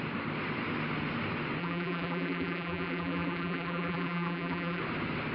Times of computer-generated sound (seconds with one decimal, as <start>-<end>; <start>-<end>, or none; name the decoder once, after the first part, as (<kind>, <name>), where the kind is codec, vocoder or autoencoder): 1.6-4.8 (vocoder, BigVGAN v2)